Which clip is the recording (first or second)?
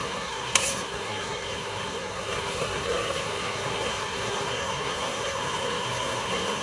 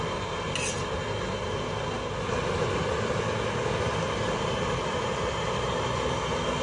second